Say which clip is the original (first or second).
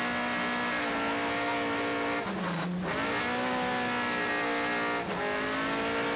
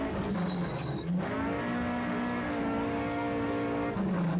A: first